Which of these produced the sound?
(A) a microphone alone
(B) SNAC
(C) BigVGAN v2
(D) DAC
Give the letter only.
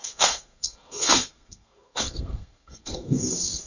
B